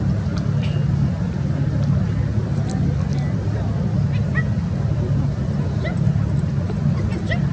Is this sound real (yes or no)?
yes